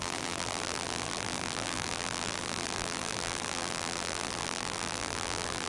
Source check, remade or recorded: remade